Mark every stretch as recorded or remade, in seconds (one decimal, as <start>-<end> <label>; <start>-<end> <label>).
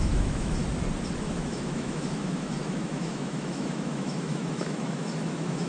0.0-0.6 remade; 0.6-1.2 recorded; 1.2-5.7 remade